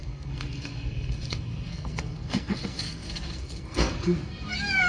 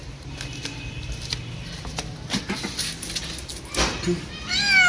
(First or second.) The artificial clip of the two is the first